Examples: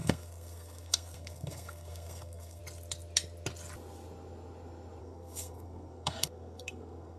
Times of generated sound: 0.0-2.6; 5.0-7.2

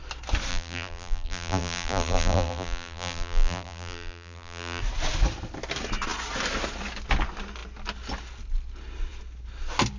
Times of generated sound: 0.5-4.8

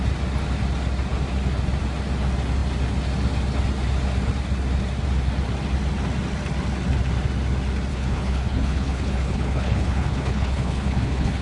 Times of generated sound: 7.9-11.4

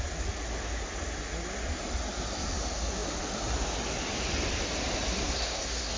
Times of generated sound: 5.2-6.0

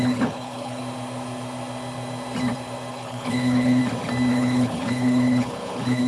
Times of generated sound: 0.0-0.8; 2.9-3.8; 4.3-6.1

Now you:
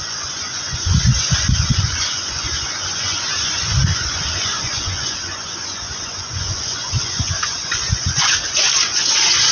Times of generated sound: 0.0-9.5